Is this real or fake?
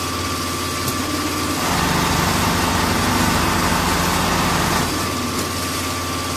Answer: real